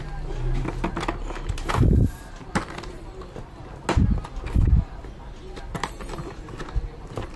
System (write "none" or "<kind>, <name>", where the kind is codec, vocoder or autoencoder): none